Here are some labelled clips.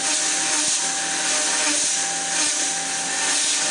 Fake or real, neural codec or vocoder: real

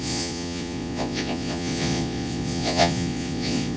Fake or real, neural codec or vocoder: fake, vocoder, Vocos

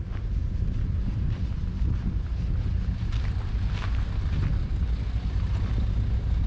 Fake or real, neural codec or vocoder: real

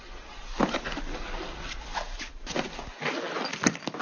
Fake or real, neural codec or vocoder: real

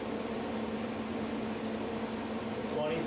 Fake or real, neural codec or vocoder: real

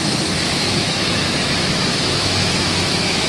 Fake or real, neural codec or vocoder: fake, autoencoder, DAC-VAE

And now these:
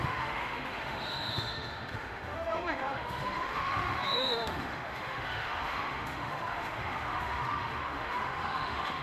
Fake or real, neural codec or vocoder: fake, autoencoder, DAC-VAE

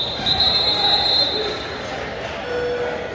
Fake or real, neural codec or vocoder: real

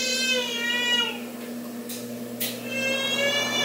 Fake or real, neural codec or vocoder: real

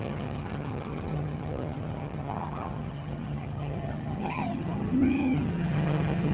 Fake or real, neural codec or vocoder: fake, vocoder, HiFi-GAN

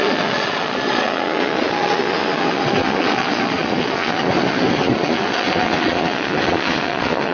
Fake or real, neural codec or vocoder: fake, vocoder, Vocos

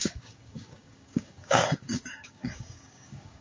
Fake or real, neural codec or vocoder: fake, codec, DAC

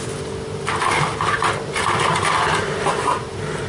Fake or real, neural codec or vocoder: real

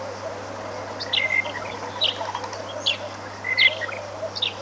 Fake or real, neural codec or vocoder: real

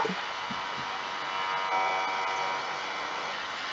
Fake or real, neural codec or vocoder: real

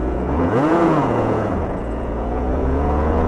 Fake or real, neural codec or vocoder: fake, vocoder, Vocos